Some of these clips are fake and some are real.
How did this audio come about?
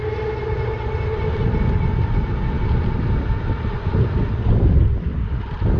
real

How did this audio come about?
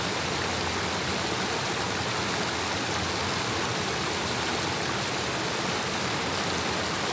real